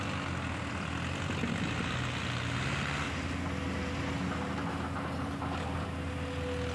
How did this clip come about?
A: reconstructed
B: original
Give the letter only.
B